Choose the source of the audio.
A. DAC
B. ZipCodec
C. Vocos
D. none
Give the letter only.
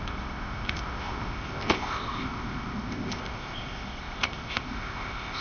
B